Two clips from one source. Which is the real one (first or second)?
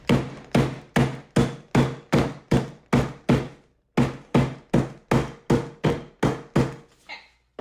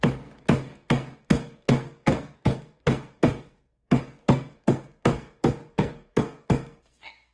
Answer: first